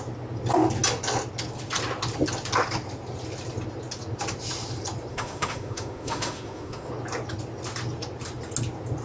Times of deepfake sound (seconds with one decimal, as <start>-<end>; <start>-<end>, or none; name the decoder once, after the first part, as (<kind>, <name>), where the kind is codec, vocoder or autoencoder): 5.1-6.9 (autoencoder, DAC-VAE)